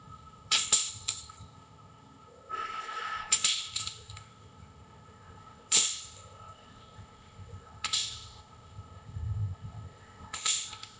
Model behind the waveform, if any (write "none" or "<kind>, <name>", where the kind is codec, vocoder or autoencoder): codec, ZipCodec